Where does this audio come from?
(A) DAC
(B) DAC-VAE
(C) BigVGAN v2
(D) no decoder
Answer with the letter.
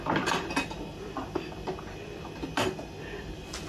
D